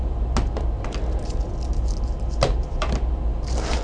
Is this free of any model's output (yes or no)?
yes